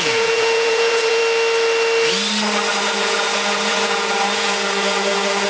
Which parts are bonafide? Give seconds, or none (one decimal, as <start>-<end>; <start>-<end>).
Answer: 1.2-2.8